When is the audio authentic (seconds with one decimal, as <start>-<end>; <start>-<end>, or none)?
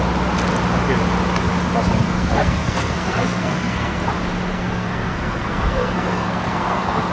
0.0-1.9; 4.0-4.5